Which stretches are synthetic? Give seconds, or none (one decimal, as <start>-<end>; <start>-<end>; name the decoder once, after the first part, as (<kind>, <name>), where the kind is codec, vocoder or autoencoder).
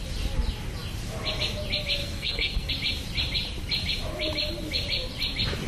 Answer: 2.0-2.7 (codec, SNAC)